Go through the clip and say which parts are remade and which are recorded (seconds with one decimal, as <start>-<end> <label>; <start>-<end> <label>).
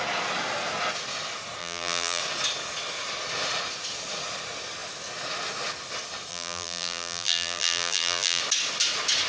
0.0-1.6 recorded; 1.6-2.2 remade; 2.2-6.3 recorded; 6.3-8.4 remade; 8.4-9.3 recorded